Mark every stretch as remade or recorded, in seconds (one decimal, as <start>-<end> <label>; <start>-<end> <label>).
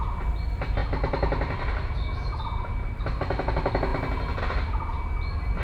0.0-5.6 recorded